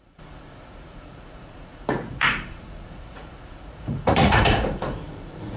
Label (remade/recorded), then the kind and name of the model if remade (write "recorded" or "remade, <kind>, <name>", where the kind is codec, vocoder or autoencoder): remade, vocoder, Vocos